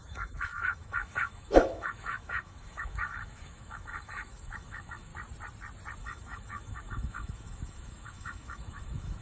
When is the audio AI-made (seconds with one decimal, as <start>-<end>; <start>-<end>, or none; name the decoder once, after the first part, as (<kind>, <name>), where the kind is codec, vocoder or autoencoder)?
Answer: 0.0-5.1 (autoencoder, DAC-VAE); 6.0-9.2